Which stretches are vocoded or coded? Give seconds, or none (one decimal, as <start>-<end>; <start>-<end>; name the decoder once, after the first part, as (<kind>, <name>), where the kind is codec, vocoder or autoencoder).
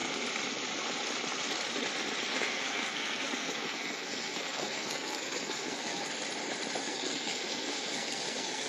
2.3-6.1 (codec, SNAC); 6.8-8.7